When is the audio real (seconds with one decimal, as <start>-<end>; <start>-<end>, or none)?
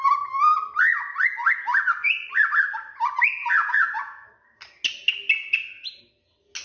0.0-3.4; 4.3-6.6